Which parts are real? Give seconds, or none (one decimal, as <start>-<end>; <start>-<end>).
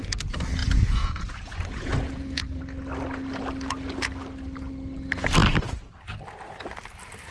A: 0.0-0.6; 2.6-7.3